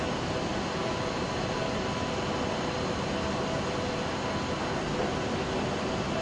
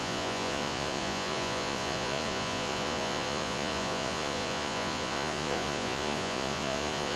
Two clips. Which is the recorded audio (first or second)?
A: first